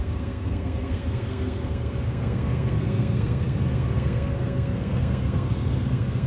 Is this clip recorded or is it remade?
remade